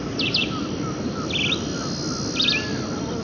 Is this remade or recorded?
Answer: recorded